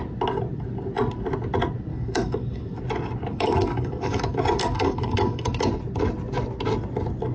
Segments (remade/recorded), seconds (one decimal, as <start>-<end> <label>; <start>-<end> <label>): 0.0-1.9 recorded; 1.9-2.8 remade; 2.8-3.3 recorded; 3.3-5.7 remade; 5.7-7.3 recorded